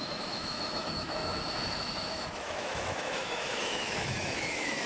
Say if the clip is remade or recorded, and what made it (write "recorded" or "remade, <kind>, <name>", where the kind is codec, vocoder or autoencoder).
remade, autoencoder, DAC-VAE